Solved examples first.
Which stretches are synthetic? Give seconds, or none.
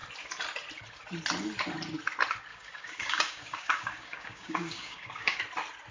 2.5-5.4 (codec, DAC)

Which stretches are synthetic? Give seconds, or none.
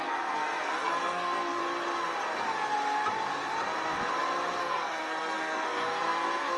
0.0-1.6 (codec, SNAC); 4.6-6.6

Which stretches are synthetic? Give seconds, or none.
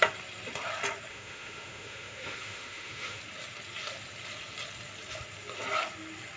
1.1-3.2 (autoencoder, DAC-VAE)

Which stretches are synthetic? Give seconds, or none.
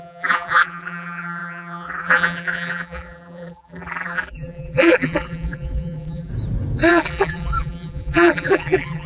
0.0-6.3 (vocoder, BigVGAN v2); 6.9-9.1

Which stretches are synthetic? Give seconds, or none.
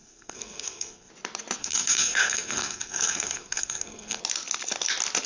0.0-1.1 (codec, SNAC); 1.6-4.2